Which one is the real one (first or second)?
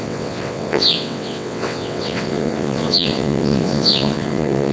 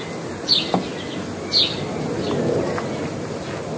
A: second